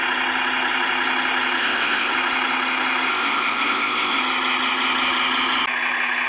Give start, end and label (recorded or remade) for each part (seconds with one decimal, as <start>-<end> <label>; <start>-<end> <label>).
0.0-1.6 recorded; 1.6-2.1 remade; 2.1-3.1 recorded; 3.1-4.2 remade; 4.2-6.3 recorded